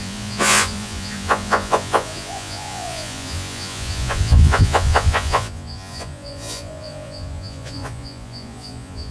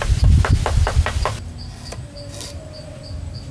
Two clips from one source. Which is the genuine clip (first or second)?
second